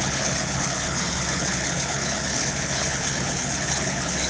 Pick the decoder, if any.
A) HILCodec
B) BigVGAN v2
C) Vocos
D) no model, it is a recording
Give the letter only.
A